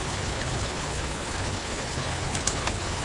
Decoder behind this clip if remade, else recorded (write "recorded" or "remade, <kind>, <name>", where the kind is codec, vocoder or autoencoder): remade, codec, HILCodec